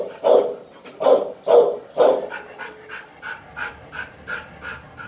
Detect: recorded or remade recorded